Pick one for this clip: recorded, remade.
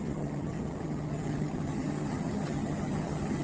remade